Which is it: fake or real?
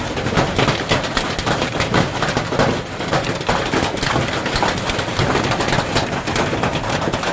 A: real